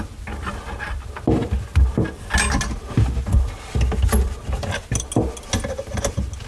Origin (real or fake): real